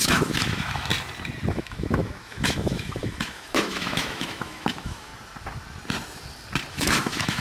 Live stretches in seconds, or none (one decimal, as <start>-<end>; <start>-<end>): 0.9-1.5; 5.1-6.7